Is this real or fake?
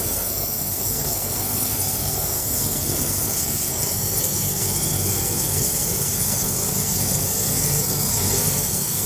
fake